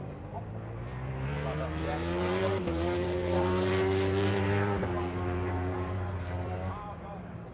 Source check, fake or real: fake